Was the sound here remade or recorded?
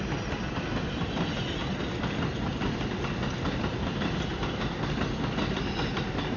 recorded